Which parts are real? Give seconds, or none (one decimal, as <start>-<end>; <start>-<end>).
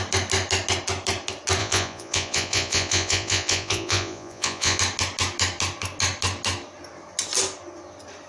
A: 0.0-1.6; 4.8-8.3